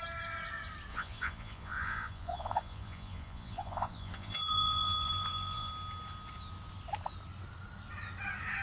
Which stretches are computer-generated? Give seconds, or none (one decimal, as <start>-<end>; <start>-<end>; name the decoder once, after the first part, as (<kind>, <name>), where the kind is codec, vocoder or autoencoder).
0.9-5.7 (vocoder, Vocos)